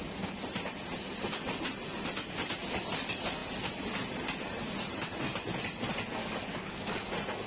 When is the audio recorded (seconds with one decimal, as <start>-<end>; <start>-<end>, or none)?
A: 0.0-6.2; 7.1-7.5